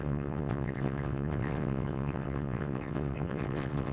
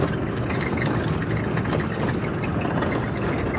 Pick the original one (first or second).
second